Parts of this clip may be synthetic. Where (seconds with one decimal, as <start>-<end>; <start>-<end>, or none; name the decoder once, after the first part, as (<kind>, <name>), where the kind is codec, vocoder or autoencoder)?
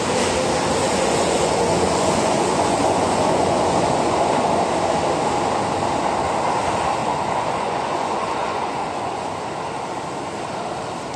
0.8-4.6 (vocoder, Vocos); 7.0-9.4